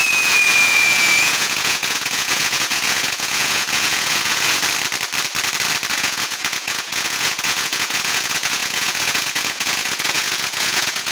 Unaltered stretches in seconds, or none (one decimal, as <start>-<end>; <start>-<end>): 4.6-5.9